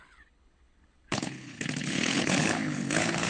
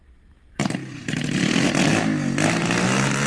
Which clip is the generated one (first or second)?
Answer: first